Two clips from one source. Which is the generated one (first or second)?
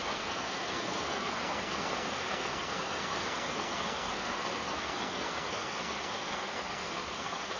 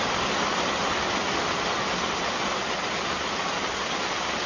first